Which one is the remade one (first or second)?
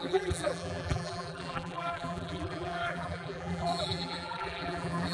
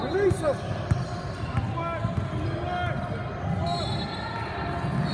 first